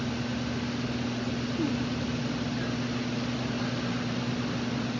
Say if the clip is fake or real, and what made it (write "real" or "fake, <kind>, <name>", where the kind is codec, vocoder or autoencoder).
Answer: real